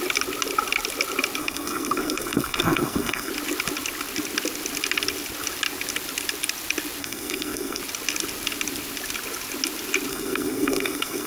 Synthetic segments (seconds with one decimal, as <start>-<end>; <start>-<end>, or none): 1.4-3.3; 7.0-7.8; 10.1-11.3